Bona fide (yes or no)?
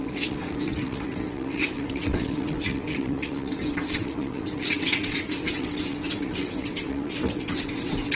no